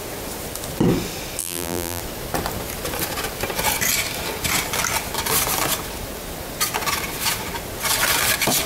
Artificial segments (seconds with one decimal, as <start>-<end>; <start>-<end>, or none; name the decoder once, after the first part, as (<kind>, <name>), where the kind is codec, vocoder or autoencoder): 1.4-2.0 (vocoder, BigVGAN v2)